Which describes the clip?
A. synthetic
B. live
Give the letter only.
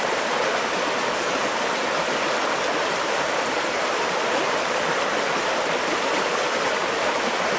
B